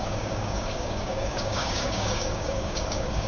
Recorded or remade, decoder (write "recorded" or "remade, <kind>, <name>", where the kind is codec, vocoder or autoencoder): remade, codec, DAC